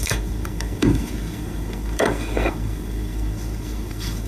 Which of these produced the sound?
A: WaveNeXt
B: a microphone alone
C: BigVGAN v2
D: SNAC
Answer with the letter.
D